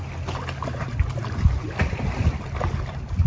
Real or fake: real